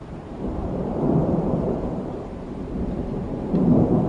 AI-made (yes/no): yes